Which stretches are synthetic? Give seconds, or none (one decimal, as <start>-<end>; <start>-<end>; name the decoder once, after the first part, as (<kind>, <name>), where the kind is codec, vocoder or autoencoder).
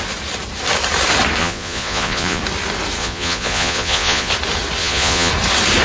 1.4-2.4 (vocoder, Vocos); 3.0-4.3; 4.8-5.3